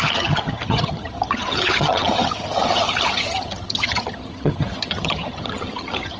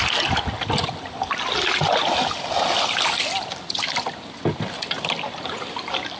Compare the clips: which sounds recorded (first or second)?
second